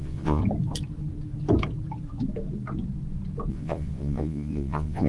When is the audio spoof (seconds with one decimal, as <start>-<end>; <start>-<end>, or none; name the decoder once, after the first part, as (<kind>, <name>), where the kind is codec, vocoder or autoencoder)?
0.0-0.4 (vocoder, Vocos); 3.5-5.1